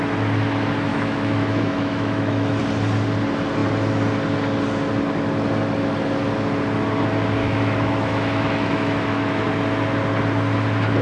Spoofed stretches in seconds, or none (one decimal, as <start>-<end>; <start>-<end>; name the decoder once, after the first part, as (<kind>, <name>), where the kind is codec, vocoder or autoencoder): 0.9-2.6 (autoencoder, DAC-VAE); 7.4-9.4